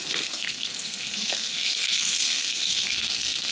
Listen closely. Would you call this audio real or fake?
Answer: fake